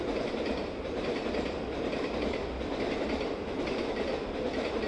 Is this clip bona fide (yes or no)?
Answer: no